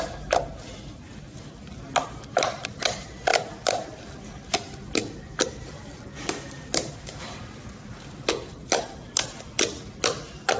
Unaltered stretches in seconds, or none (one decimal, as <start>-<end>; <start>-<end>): 0.0-3.3; 4.0-10.6